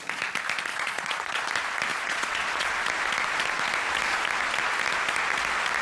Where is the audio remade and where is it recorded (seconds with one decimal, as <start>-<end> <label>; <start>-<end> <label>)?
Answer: 0.0-0.7 recorded; 0.7-1.4 remade; 1.4-1.9 recorded; 1.9-2.7 remade; 2.7-5.8 recorded